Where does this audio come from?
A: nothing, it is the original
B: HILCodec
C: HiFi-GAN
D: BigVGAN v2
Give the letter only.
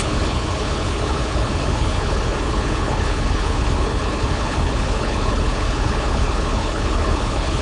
B